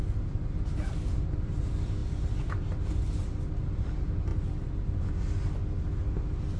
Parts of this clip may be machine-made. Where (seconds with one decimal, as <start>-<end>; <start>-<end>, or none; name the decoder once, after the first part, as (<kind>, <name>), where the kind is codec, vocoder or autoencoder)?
none